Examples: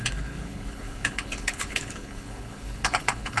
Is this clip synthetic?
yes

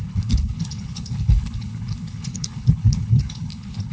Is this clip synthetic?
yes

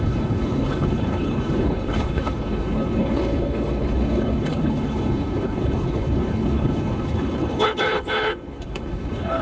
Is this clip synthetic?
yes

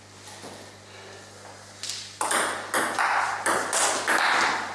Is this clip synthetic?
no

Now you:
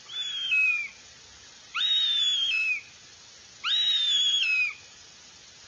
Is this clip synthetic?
no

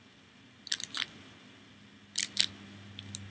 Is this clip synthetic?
no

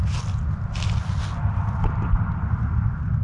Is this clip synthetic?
no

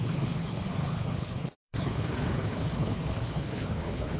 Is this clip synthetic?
yes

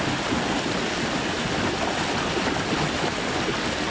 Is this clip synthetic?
no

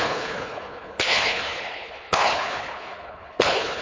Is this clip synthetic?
yes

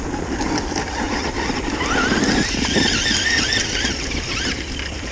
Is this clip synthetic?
no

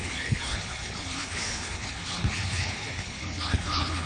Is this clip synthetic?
yes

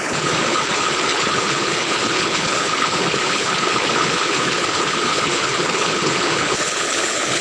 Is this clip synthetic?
yes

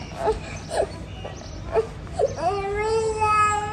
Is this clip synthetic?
no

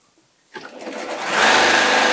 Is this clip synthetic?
no